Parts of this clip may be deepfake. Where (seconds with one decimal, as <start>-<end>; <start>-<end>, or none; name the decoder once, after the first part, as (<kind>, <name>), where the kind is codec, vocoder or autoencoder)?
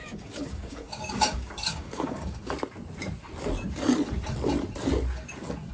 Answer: 0.0-2.5 (codec, DAC)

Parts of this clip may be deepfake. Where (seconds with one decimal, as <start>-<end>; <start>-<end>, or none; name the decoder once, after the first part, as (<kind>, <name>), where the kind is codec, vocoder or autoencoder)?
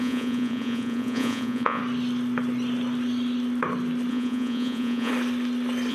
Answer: 0.0-1.8 (vocoder, Vocos); 4.1-5.1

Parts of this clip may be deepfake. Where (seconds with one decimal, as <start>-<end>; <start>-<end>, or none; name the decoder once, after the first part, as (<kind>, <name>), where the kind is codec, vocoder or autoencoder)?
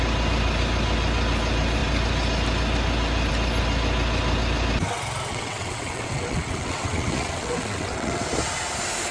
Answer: 5.3-8.2 (vocoder, WaveNeXt)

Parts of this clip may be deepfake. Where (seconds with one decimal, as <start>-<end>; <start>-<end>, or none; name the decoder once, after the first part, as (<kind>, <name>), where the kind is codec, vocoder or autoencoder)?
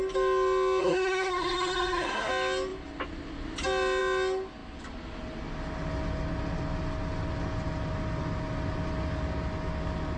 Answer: 0.8-2.3 (codec, SNAC)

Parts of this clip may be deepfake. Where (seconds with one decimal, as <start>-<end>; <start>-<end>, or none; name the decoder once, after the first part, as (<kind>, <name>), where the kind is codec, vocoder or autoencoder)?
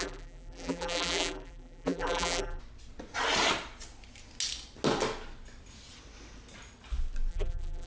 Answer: 0.0-2.6 (vocoder, BigVGAN v2); 7.3-7.9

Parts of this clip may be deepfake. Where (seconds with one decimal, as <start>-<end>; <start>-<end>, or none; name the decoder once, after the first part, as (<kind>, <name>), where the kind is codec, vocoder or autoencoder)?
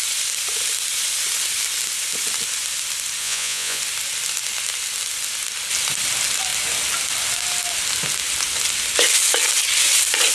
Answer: 3.2-3.8 (vocoder, Vocos)